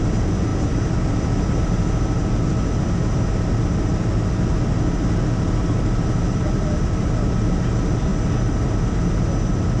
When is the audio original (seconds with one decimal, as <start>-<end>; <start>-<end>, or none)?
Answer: 0.0-0.5; 1.5-9.8